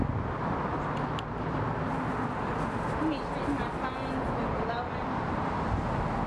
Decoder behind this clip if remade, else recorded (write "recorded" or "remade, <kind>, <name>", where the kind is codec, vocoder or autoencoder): recorded